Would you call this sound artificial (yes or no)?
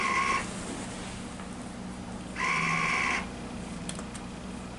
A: no